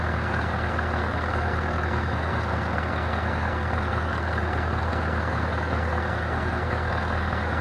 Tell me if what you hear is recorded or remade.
remade